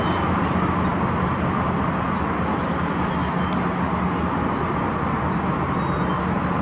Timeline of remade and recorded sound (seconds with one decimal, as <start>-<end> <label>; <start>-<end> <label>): 0.0-6.6 recorded